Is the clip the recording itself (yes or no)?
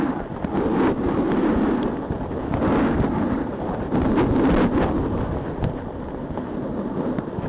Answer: yes